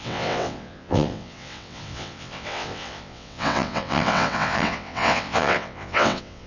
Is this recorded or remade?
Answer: remade